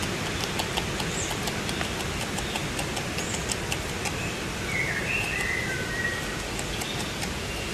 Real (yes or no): yes